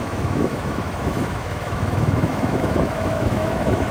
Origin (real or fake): fake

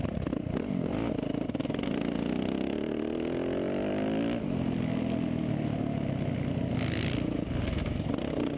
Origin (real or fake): real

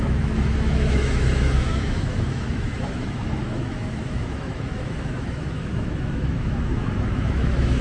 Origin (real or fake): fake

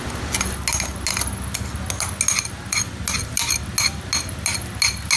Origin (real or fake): real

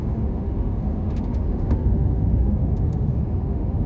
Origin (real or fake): fake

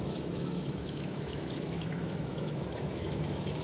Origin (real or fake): fake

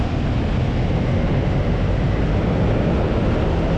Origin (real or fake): real